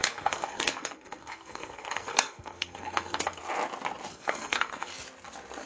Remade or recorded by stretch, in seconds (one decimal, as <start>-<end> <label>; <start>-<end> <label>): 0.0-3.4 remade; 3.4-4.1 recorded; 4.1-4.9 remade; 4.9-5.7 recorded